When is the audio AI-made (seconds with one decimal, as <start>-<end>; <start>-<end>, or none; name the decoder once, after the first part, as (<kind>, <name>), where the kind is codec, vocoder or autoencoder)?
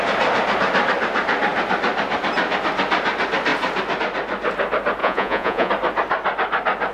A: 5.0-5.7 (vocoder, Vocos)